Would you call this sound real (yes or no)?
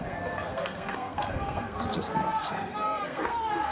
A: no